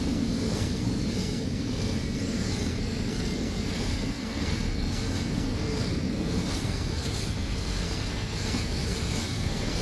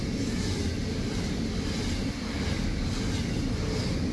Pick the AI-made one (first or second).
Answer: first